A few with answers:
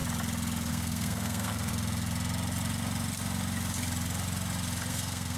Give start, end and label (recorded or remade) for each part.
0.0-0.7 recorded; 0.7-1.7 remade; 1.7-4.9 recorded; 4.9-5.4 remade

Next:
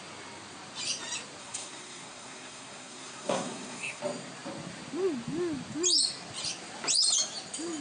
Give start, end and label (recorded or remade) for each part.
0.0-1.4 recorded; 1.4-4.0 remade; 4.0-7.8 recorded

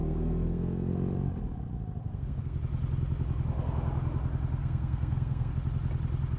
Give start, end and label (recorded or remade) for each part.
0.0-0.9 remade; 0.9-2.0 recorded; 2.0-2.6 remade; 2.6-4.6 recorded; 4.6-5.5 remade; 5.5-6.4 recorded

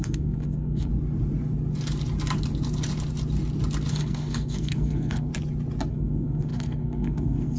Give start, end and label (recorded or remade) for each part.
0.0-0.9 remade; 0.9-3.9 recorded; 3.9-5.3 remade; 5.3-5.9 recorded; 5.9-7.6 remade

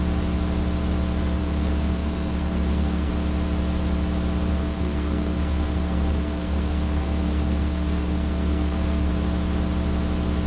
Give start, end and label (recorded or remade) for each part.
0.0-1.4 recorded; 1.4-3.1 remade; 3.1-4.5 recorded; 4.5-9.1 remade; 9.1-10.5 recorded

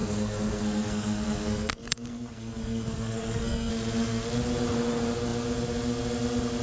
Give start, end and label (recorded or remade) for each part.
0.0-3.7 remade; 3.7-6.6 recorded

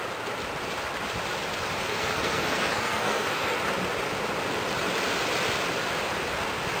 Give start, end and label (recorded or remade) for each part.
0.0-1.8 recorded; 1.8-3.6 remade; 3.6-6.8 recorded